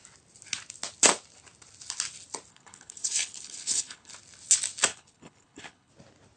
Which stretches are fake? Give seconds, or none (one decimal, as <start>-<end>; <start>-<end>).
2.5-4.1; 4.9-5.9